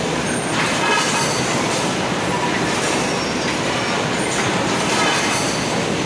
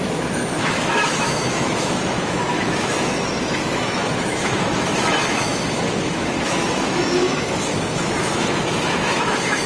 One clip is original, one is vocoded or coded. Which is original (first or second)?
first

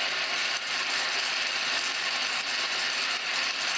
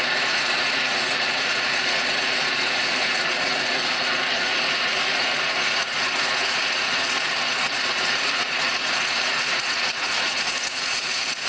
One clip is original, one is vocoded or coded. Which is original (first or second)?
first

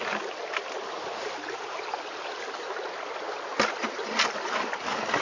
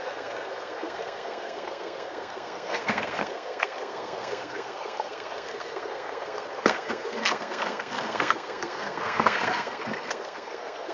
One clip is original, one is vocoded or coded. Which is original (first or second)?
first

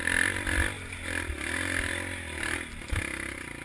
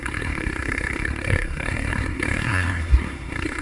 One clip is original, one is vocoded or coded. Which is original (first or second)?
first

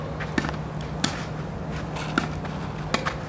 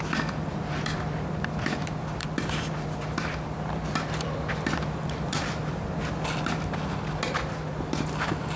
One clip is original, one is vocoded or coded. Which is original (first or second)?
first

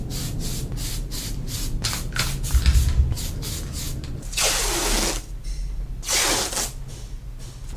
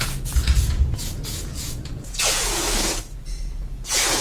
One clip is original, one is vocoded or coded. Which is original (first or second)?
first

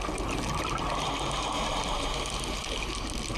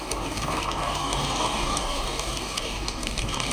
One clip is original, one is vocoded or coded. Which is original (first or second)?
first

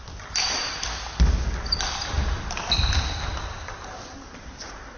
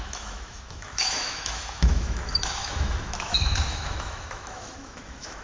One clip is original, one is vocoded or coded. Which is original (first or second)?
first